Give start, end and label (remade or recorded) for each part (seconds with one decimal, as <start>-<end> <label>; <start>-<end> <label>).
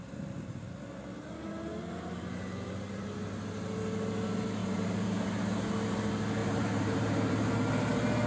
0.0-4.6 recorded; 4.6-5.4 remade; 5.4-6.4 recorded; 6.4-7.5 remade; 7.5-8.3 recorded